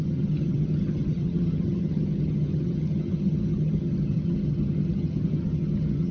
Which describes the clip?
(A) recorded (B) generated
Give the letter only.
B